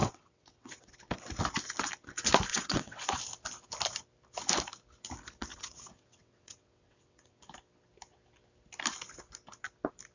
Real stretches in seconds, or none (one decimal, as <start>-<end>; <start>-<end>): 0.9-2.5; 3.2-5.5; 7.5-10.1